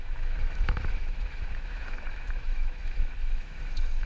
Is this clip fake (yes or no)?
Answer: yes